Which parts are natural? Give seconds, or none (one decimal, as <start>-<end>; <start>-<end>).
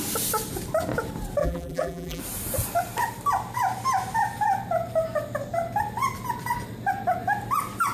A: 0.0-1.4; 2.2-7.9